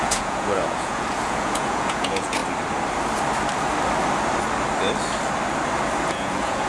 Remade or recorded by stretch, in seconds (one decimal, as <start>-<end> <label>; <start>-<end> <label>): 0.0-2.4 remade; 2.4-6.1 recorded; 6.1-6.7 remade